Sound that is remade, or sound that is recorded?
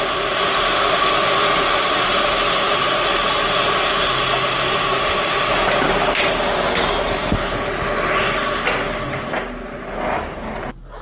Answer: recorded